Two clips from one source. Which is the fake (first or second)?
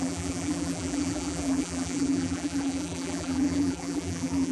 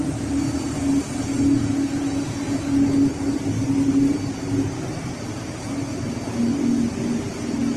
first